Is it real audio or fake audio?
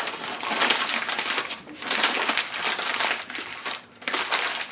fake